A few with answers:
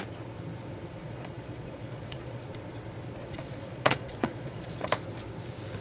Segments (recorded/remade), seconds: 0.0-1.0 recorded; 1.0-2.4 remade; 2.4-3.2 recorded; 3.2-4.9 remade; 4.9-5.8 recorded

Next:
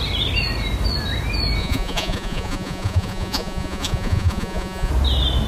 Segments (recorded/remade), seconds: 0.0-1.6 recorded; 1.6-4.9 remade; 4.9-5.5 recorded

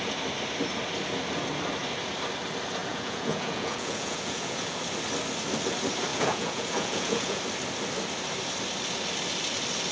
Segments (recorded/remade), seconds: 0.0-2.8 recorded; 2.8-4.8 remade; 4.8-6.1 recorded; 6.1-7.4 remade; 7.4-9.9 recorded